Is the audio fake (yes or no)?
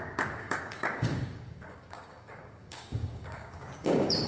yes